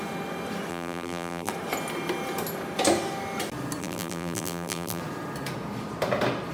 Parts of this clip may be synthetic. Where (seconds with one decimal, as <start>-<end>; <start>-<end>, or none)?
0.7-1.5; 3.8-5.0